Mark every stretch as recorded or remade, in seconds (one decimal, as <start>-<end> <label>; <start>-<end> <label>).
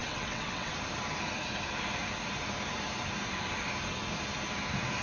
0.0-0.7 remade; 0.7-5.0 recorded